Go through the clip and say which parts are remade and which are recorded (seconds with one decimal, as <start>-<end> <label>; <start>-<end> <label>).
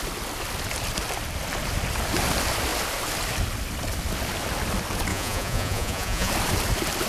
0.0-5.1 recorded; 5.1-6.3 remade; 6.3-7.1 recorded